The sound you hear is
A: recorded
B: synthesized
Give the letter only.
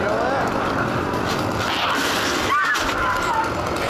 A